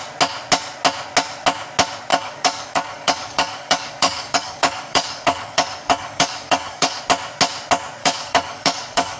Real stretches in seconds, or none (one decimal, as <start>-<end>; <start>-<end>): 0.0-2.1; 7.0-8.0